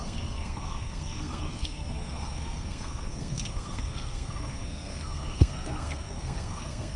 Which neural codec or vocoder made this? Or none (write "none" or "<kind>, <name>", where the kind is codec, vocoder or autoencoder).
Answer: codec, SNAC